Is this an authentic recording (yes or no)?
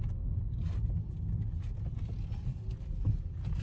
yes